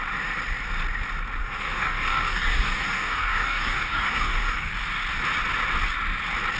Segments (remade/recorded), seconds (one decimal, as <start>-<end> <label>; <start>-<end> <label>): 0.0-1.4 recorded; 1.4-4.7 remade; 4.7-6.6 recorded